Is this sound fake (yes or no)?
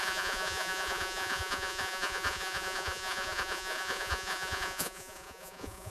yes